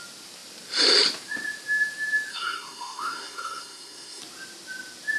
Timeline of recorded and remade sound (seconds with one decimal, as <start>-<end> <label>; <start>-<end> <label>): 0.0-2.3 recorded; 2.3-4.2 remade; 4.2-5.2 recorded